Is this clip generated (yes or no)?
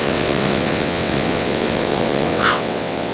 yes